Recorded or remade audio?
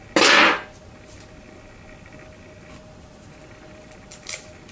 recorded